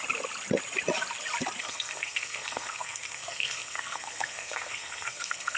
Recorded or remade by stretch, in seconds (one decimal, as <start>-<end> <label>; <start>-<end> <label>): 0.0-1.6 recorded; 1.6-5.6 remade